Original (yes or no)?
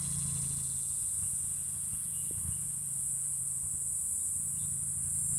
no